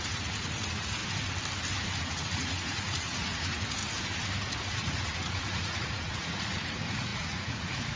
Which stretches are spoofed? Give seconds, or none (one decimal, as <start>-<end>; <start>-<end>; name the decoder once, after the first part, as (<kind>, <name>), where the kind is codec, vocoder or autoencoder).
0.0-1.0 (vocoder, Vocos); 2.0-3.8; 4.6-8.0